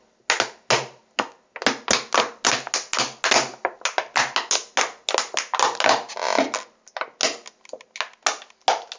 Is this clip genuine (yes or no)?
yes